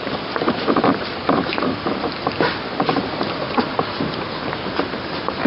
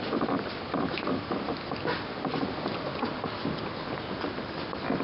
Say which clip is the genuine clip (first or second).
second